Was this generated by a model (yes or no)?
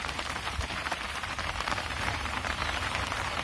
yes